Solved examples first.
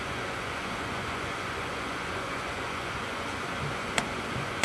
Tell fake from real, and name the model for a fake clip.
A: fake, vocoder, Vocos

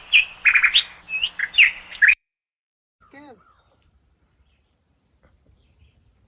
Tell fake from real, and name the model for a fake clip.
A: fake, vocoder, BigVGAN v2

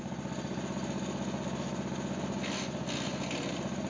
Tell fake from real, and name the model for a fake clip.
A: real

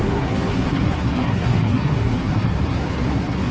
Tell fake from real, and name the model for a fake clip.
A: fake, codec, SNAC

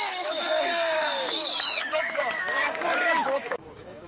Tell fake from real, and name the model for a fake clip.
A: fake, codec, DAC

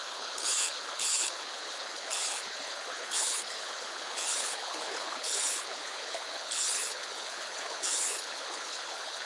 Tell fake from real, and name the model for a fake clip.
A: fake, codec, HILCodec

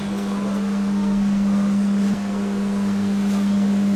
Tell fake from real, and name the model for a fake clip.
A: fake, codec, SNAC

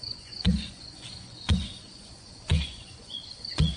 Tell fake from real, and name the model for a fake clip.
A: fake, vocoder, Vocos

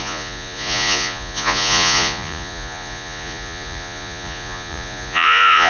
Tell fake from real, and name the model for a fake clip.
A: fake, vocoder, Vocos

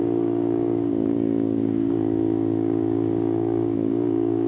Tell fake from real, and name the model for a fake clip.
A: fake, codec, DAC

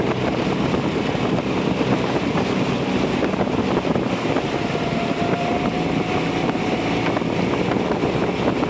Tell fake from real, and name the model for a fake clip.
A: real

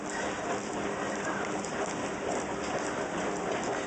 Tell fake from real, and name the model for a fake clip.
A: fake, vocoder, BigVGAN v2